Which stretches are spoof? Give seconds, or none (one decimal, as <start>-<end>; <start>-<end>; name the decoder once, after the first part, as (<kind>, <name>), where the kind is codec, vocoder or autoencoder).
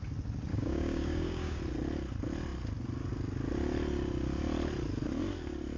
0.5-1.6 (codec, DAC)